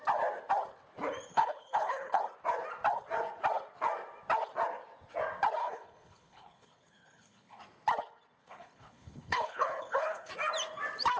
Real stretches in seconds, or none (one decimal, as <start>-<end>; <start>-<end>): 0.0-1.3; 2.2-5.6; 7.6-8.4; 10.3-11.2